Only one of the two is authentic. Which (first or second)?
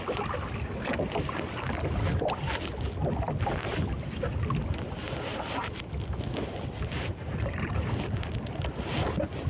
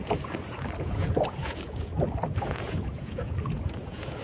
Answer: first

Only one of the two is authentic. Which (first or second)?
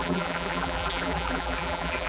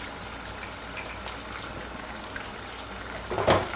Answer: second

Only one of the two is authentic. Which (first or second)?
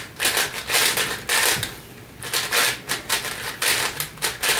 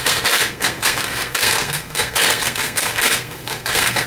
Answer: first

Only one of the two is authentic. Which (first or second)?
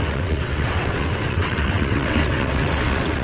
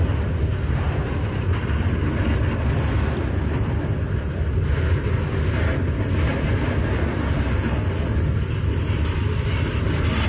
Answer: second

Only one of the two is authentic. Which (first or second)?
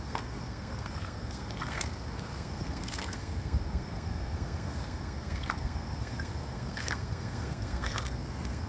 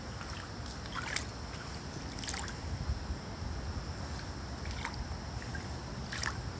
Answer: second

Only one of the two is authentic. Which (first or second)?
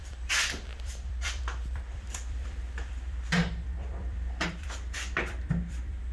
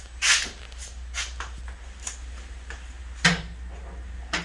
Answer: second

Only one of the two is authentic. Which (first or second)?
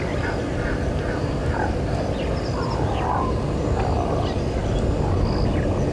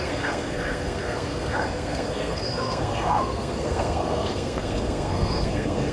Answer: first